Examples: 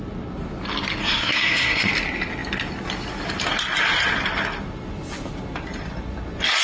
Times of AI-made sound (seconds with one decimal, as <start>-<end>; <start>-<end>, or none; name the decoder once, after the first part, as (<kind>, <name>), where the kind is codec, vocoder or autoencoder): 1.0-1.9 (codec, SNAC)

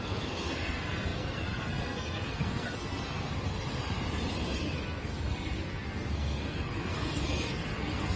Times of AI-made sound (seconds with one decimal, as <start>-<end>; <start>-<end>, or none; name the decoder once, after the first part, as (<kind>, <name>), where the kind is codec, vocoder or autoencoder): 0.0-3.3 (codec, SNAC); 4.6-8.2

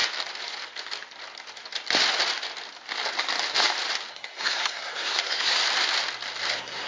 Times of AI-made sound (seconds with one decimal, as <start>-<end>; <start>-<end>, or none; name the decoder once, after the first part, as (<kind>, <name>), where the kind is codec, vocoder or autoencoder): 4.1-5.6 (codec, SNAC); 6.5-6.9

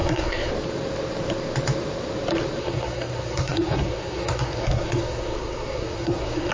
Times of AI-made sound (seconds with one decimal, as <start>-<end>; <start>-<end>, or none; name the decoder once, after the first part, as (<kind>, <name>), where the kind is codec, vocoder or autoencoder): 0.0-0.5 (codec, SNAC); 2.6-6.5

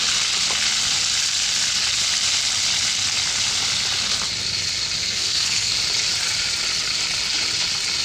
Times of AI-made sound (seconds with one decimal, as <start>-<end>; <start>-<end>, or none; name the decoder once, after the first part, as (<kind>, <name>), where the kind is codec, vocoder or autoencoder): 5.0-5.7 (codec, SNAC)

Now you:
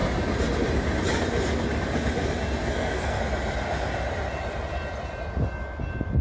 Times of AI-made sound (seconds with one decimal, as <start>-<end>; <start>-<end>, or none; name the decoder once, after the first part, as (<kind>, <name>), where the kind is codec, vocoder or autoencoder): 2.6-3.2 (codec, SNAC)

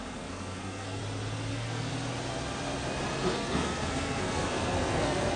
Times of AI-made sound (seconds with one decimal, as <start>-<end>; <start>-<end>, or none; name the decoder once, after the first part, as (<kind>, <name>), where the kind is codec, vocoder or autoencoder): 0.0-1.0 (codec, SNAC); 1.5-1.9; 3.3-5.4

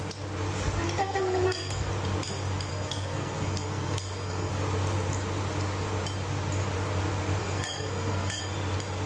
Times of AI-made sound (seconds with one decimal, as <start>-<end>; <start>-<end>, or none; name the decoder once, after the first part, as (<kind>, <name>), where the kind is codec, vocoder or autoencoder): 1.0-1.9 (codec, SNAC); 2.7-4.5; 7.4-8.4